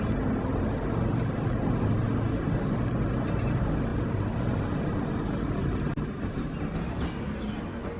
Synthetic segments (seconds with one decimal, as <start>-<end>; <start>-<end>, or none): none